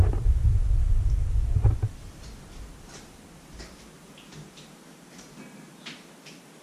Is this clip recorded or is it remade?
recorded